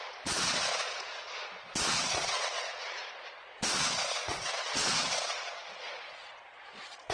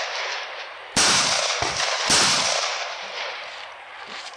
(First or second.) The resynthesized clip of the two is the first